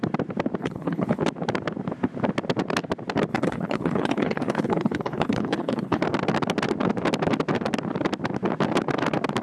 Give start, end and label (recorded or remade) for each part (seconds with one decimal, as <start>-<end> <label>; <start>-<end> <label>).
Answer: 0.0-0.6 recorded; 0.6-1.2 remade; 1.2-3.3 recorded; 3.3-6.0 remade; 6.0-9.4 recorded